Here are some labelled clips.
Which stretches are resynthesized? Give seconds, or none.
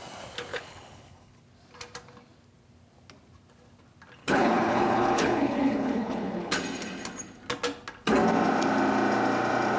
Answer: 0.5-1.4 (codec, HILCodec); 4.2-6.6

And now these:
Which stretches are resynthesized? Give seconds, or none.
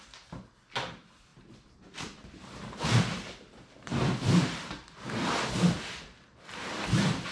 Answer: 1.3-5.4 (vocoder, BigVGAN v2)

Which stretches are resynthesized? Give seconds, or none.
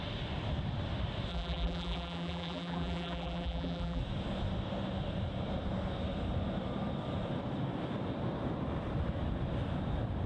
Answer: 1.3-4.0 (vocoder, BigVGAN v2)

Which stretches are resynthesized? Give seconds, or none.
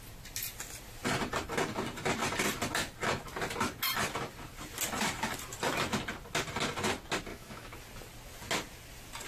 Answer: 7.3-7.8 (autoencoder, DAC-VAE)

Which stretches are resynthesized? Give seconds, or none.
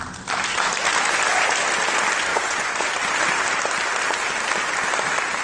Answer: 2.3-2.9 (vocoder, Vocos)